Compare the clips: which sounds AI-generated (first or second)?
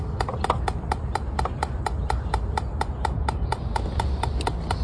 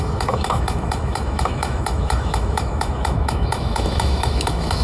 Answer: second